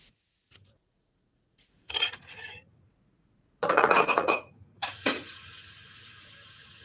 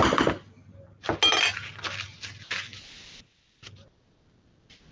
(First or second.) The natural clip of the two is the second